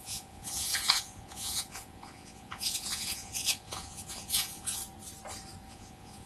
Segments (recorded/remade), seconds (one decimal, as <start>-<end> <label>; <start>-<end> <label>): 0.0-4.8 remade; 4.8-5.7 recorded; 5.7-6.3 remade